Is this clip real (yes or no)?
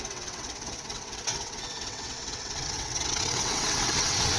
no